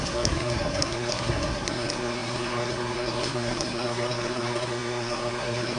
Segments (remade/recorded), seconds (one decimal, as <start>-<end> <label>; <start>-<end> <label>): 0.0-5.8 remade